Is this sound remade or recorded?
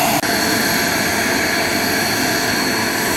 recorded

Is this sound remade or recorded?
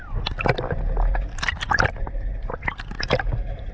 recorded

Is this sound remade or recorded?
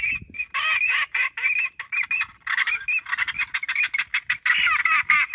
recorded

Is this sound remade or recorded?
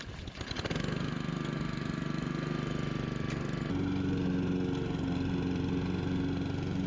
recorded